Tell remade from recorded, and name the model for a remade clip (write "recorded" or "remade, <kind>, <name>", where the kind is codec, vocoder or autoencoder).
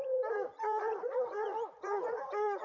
remade, vocoder, Vocos